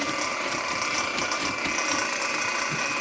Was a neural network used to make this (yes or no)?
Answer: no